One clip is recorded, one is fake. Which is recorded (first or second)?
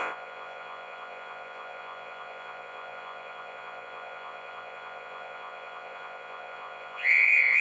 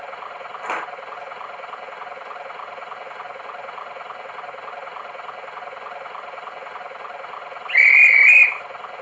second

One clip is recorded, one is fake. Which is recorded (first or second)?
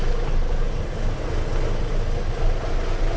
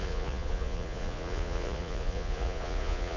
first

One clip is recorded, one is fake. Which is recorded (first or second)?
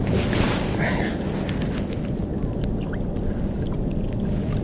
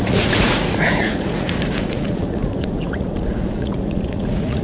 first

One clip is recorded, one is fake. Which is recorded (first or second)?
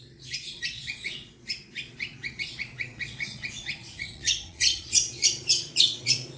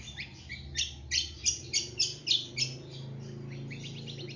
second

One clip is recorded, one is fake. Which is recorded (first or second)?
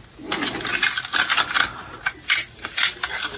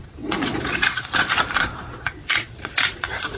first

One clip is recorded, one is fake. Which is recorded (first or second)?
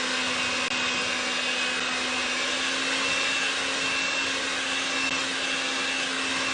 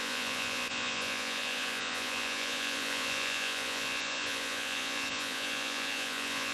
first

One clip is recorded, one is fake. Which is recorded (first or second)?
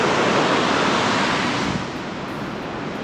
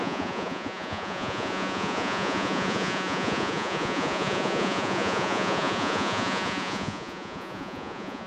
first